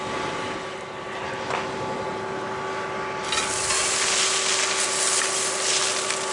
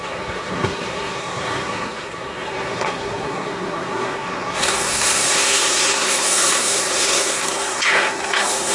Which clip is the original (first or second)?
first